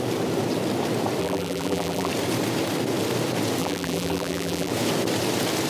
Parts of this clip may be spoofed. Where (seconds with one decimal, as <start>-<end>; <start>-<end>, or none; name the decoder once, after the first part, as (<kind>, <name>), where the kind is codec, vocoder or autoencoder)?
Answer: 1.2-2.1 (vocoder, BigVGAN v2); 3.6-4.7